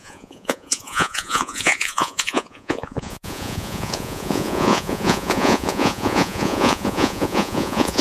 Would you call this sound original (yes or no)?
no